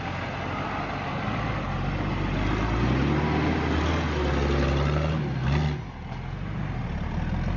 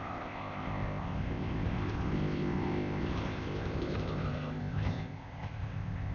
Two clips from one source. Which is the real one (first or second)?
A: first